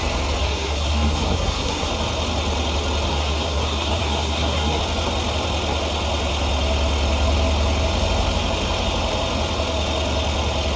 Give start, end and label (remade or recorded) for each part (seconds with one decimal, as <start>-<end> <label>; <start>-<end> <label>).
0.0-0.4 recorded; 0.4-1.9 remade; 1.9-3.1 recorded; 3.1-4.8 remade; 4.8-10.8 recorded

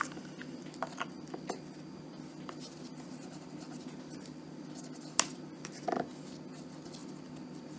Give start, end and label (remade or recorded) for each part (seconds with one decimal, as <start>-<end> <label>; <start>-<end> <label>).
0.0-7.8 recorded